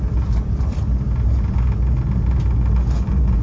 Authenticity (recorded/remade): recorded